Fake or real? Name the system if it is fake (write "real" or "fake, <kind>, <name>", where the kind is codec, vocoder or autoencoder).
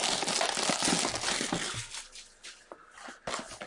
real